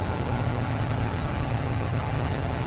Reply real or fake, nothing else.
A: fake